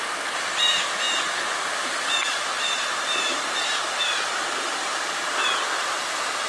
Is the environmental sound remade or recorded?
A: recorded